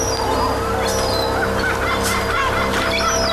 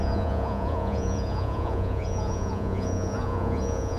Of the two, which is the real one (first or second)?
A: first